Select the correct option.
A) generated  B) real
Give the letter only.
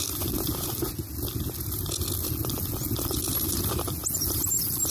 B